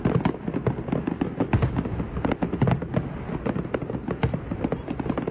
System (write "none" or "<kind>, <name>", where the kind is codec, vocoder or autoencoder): none